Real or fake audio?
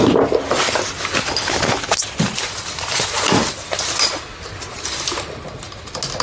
real